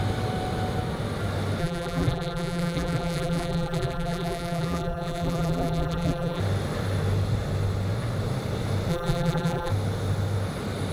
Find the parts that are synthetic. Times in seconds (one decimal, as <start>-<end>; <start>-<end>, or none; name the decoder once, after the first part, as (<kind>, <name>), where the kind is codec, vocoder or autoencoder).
1.6-6.4 (vocoder, BigVGAN v2); 8.9-9.7